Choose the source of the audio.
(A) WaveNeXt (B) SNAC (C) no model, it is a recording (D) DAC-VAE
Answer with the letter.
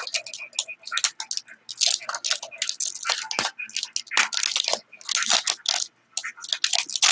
C